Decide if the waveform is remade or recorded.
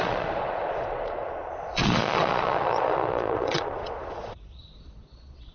remade